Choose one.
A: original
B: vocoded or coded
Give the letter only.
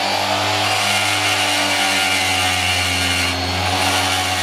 A